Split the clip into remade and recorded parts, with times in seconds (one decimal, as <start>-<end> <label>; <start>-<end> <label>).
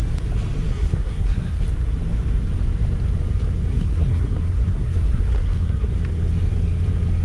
0.0-0.7 recorded; 0.7-1.6 remade; 1.6-3.7 recorded; 3.7-5.9 remade; 5.9-7.2 recorded